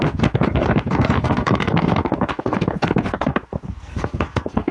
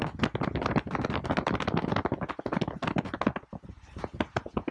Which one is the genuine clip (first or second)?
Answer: second